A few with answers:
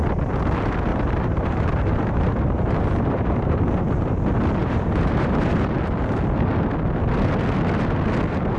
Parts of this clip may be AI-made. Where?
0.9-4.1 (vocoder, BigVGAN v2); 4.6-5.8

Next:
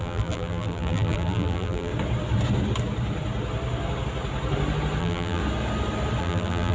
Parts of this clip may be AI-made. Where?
0.0-1.9 (vocoder, BigVGAN v2); 5.0-5.4; 6.2-6.7